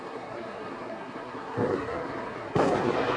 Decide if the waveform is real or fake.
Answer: fake